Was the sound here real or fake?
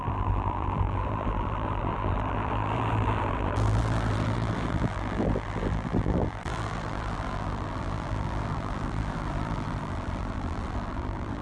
fake